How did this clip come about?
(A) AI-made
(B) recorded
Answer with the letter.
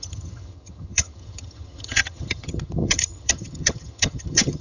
A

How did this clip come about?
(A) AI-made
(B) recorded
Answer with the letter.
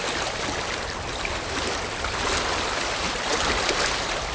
B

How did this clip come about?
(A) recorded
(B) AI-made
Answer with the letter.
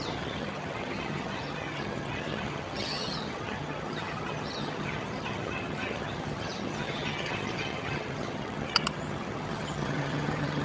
B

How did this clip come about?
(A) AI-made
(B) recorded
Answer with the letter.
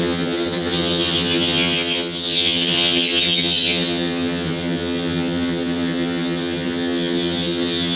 A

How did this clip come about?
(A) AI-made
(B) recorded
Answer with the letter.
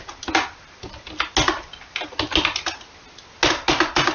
B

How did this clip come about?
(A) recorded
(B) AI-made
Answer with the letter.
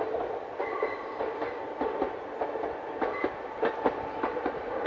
A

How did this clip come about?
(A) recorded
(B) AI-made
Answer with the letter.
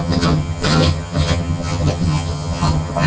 B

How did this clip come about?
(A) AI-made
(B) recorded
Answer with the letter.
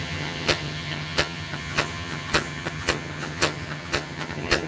A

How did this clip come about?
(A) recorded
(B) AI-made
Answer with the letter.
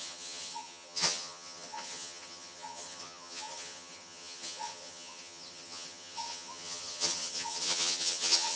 B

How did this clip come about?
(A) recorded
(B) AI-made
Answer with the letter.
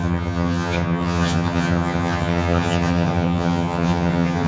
B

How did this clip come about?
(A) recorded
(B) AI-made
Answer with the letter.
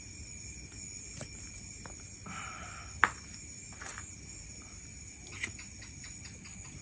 A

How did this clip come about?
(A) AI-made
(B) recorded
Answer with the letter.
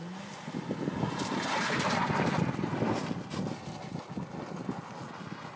B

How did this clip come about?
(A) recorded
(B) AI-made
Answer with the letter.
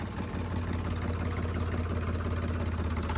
A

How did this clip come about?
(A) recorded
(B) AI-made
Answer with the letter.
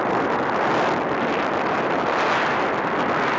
A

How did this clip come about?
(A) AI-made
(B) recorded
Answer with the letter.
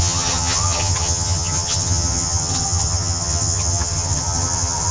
A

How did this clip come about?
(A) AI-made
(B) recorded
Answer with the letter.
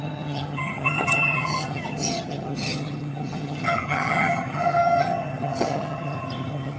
A